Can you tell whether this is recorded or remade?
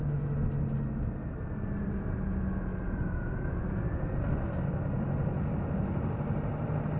recorded